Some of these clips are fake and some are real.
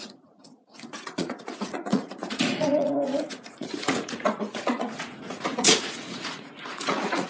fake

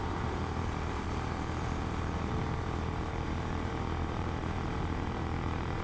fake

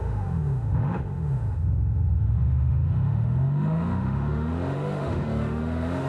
fake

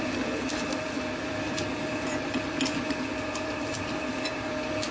fake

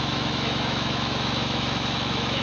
fake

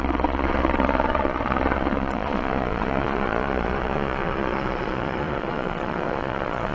fake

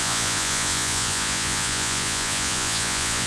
fake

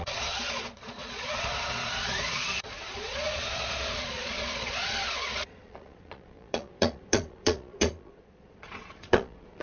fake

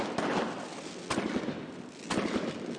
real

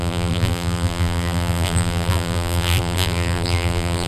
fake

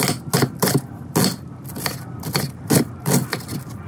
real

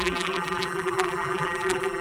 fake